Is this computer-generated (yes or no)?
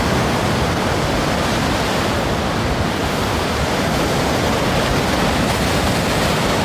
no